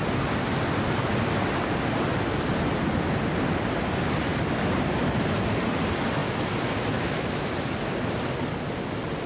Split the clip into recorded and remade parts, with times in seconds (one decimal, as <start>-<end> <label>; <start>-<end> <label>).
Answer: 0.0-9.3 recorded